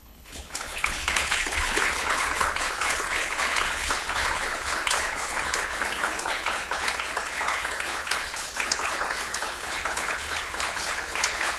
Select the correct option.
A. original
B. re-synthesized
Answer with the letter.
B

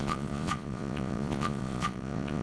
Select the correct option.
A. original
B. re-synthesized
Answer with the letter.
B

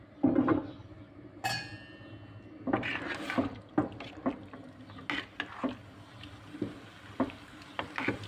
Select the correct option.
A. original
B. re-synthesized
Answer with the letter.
A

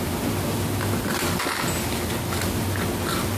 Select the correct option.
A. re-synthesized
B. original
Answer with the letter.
B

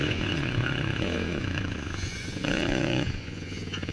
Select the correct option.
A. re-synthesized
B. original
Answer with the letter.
A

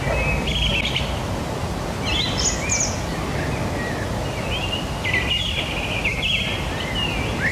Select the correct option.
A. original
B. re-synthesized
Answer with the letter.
A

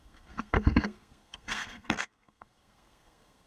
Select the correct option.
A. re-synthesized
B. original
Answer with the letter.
A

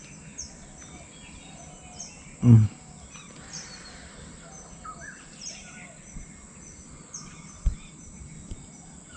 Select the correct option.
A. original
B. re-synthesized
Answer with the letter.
A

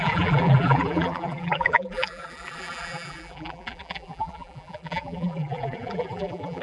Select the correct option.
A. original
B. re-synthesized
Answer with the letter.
B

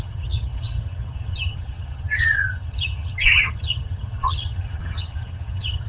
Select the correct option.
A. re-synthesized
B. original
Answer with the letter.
A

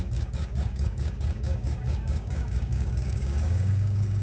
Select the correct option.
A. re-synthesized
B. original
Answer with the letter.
A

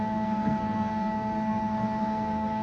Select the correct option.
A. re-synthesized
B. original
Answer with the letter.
A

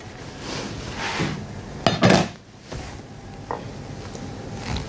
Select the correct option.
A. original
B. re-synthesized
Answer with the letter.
A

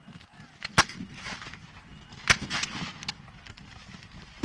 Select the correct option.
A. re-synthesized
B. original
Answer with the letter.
B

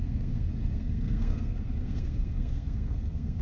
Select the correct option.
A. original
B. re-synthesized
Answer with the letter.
B